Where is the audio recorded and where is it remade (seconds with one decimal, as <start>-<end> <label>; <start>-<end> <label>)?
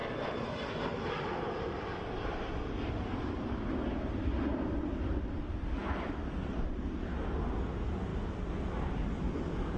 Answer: 0.0-9.8 recorded